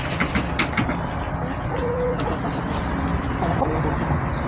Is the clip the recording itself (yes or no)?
yes